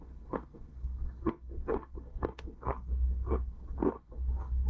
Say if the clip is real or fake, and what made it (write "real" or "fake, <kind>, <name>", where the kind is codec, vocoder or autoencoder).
fake, codec, SNAC